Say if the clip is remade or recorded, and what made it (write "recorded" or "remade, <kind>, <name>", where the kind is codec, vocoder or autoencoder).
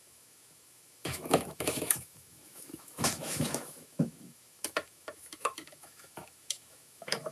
remade, autoencoder, DAC-VAE